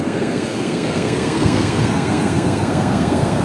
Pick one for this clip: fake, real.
fake